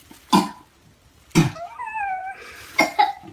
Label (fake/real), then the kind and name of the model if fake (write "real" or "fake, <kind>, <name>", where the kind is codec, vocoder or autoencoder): real